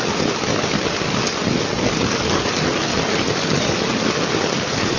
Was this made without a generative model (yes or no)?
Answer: yes